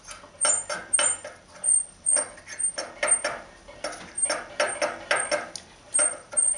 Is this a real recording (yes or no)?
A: yes